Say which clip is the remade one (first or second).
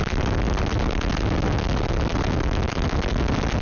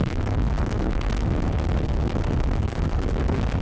second